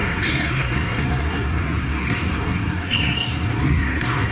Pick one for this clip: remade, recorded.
remade